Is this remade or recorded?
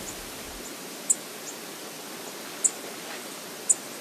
recorded